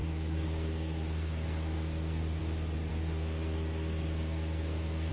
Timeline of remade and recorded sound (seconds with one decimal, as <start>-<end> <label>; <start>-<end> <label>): 0.0-2.4 remade; 2.4-2.9 recorded; 2.9-5.1 remade